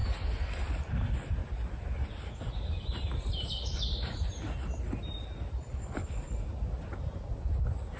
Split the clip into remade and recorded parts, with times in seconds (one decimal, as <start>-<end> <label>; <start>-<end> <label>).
0.0-8.0 recorded